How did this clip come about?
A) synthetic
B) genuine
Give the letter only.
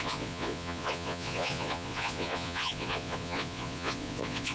A